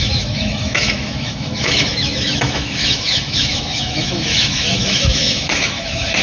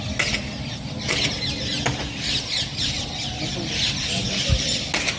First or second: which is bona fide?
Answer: second